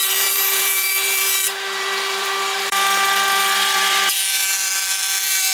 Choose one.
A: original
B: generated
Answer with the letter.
B